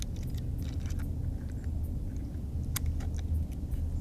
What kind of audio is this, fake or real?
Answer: real